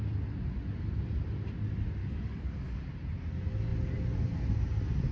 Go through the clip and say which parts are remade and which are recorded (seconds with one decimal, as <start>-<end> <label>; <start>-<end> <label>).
0.0-2.0 recorded; 2.0-2.8 remade; 2.8-5.1 recorded